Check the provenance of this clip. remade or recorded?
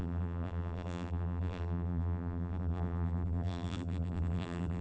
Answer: remade